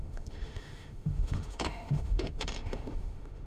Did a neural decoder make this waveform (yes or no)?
yes